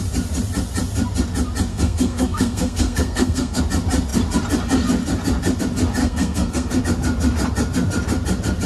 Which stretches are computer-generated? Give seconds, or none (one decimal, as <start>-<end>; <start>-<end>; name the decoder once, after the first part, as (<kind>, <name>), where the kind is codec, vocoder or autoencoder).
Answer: 1.7-3.6 (codec, SNAC); 6.0-6.8